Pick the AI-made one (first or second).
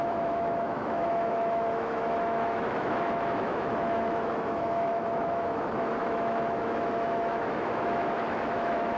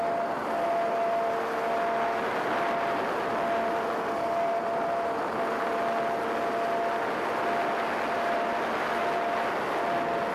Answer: first